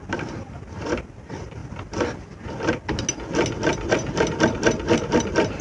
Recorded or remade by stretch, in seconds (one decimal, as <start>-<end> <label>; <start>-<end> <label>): 0.0-1.6 remade; 1.6-3.9 recorded; 3.9-5.6 remade